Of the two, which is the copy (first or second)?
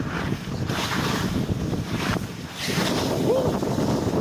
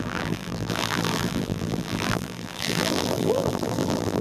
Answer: second